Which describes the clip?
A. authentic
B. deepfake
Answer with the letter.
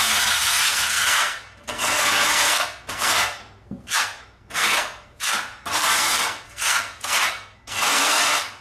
B